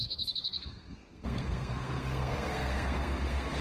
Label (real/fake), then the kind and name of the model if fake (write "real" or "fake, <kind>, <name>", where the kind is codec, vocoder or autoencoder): fake, codec, SNAC